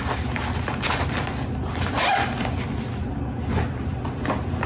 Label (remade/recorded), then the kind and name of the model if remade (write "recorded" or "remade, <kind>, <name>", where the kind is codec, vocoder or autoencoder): recorded